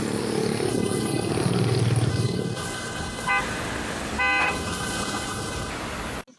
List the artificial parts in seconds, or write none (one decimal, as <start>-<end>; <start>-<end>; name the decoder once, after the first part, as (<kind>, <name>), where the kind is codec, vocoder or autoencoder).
0.7-1.3 (codec, HILCodec); 2.1-3.3; 4.4-5.7